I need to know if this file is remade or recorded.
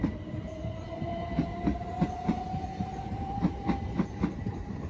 remade